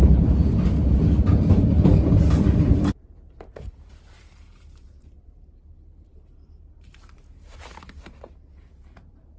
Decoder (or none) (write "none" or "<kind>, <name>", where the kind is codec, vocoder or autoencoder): vocoder, BigVGAN v2